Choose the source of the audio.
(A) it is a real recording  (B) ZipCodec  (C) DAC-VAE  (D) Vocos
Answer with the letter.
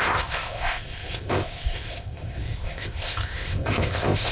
B